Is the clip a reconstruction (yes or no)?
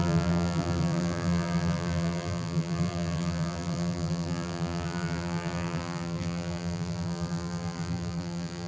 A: yes